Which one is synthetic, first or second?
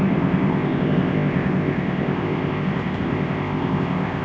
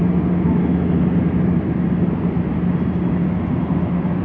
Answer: first